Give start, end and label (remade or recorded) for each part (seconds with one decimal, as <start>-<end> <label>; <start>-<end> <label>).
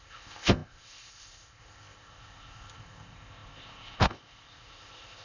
0.0-5.2 remade